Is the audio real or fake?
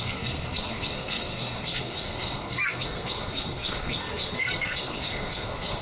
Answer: fake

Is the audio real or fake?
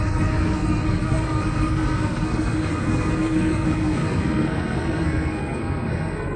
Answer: fake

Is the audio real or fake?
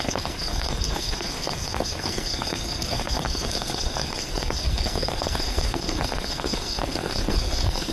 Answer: fake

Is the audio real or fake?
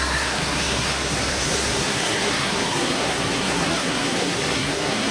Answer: fake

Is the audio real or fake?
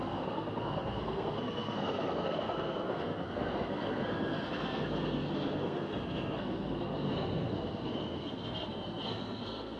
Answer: fake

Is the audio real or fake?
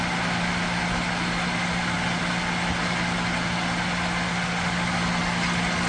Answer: real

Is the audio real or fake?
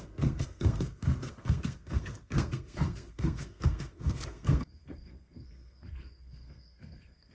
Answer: fake